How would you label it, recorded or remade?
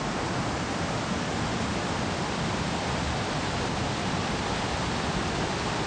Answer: remade